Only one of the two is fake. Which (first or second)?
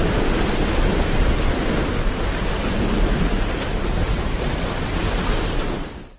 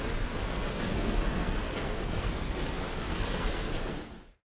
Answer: second